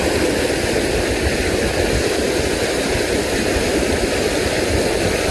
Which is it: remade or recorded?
recorded